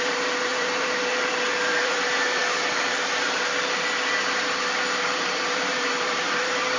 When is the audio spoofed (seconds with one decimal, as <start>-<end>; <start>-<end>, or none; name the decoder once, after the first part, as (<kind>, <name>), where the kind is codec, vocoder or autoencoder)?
0.0-2.4 (vocoder, BigVGAN v2); 5.0-6.8